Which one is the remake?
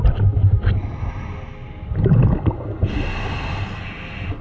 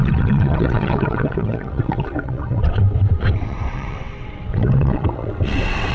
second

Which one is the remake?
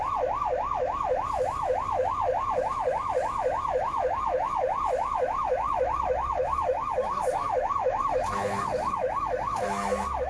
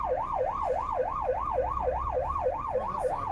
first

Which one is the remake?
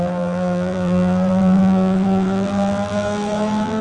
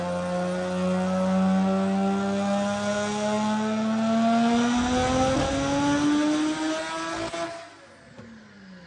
first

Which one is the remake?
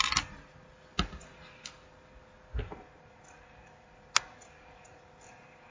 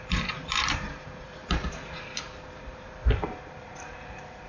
second